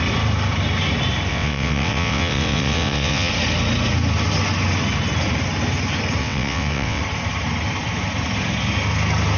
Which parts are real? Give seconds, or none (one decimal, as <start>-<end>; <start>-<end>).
0.0-1.3; 3.3-6.2; 7.0-9.4